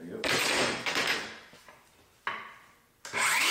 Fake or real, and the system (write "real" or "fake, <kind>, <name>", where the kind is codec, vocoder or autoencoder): real